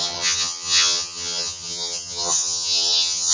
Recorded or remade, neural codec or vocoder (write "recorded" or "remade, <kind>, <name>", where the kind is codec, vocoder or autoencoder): remade, vocoder, HiFi-GAN